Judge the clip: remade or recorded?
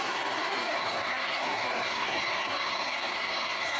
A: remade